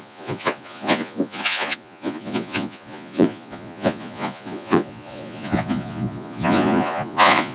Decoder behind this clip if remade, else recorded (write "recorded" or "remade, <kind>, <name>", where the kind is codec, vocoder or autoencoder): remade, vocoder, Vocos